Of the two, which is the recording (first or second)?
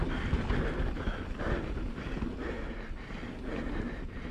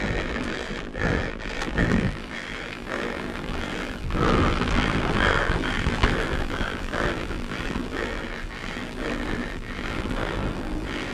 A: first